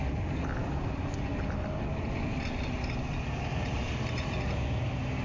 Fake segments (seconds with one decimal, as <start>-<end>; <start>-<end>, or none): none